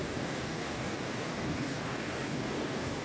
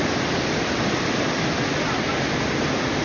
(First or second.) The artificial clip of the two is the first